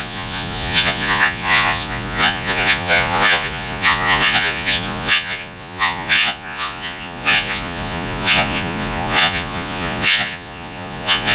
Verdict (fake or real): fake